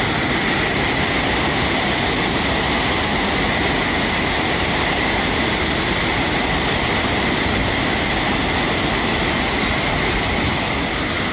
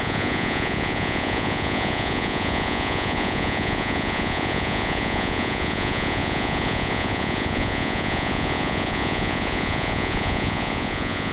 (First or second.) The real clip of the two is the first